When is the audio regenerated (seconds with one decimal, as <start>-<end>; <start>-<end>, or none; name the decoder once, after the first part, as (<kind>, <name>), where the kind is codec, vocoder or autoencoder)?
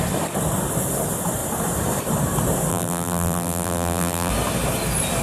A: 2.7-4.3 (vocoder, BigVGAN v2)